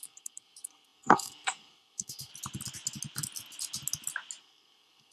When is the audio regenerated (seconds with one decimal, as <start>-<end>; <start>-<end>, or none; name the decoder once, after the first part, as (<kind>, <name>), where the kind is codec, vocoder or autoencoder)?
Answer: 0.0-2.3 (codec, SNAC); 4.4-5.1